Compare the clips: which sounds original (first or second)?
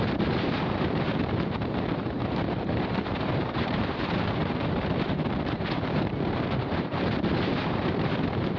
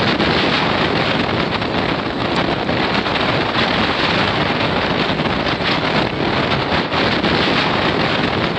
second